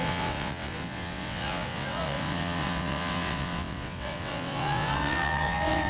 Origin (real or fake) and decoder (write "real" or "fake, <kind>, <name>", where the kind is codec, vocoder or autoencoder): fake, vocoder, WaveNeXt